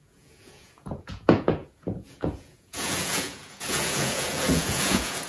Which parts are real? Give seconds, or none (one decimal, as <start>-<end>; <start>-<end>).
none